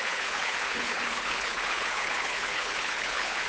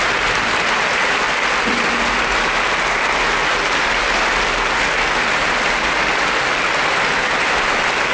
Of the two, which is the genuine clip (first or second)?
second